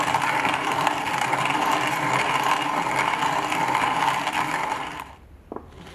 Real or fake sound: real